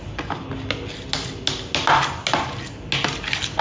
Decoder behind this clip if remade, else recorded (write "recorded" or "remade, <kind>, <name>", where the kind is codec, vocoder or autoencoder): recorded